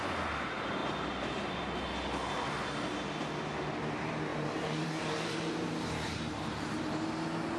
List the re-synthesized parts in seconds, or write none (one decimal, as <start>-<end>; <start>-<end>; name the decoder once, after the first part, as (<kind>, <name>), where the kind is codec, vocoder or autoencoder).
4.3-6.8 (vocoder, BigVGAN v2)